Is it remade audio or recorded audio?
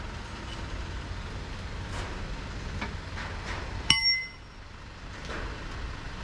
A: recorded